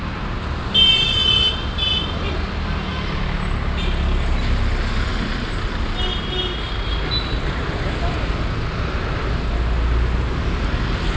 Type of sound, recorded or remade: recorded